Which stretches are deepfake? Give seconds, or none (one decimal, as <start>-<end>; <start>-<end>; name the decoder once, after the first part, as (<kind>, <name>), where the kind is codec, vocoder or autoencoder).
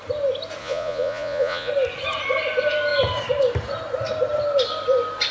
0.6-1.7 (vocoder, Vocos)